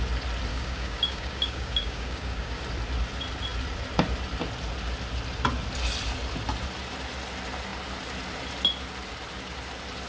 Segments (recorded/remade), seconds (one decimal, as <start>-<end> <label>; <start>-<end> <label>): 0.0-0.5 recorded; 0.5-2.6 remade; 2.6-10.1 recorded